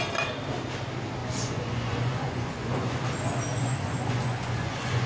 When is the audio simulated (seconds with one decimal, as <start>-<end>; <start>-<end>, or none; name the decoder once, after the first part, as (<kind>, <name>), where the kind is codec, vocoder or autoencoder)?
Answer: 1.2-3.0 (vocoder, Vocos); 3.5-5.1